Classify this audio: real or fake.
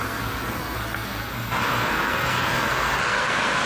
fake